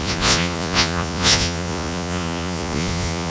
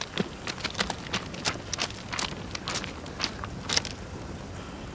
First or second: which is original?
second